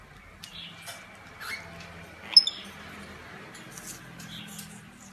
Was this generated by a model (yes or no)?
no